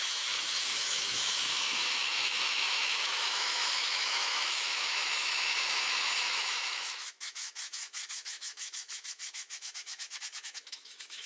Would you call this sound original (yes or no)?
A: no